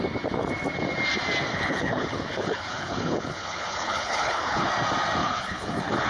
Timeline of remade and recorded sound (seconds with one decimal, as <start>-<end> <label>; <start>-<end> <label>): 0.0-1.5 recorded; 1.5-4.7 remade; 4.7-5.2 recorded; 5.2-6.1 remade